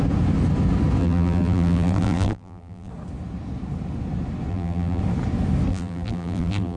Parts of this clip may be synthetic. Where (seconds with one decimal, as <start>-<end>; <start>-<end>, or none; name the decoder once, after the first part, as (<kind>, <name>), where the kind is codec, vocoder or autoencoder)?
1.0-2.9 (vocoder, BigVGAN v2); 4.5-5.0; 5.7-6.8